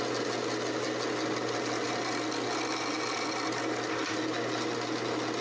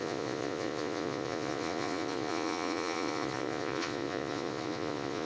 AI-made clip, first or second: second